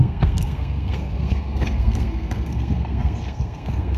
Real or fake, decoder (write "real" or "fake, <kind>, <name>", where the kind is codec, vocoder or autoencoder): fake, codec, SNAC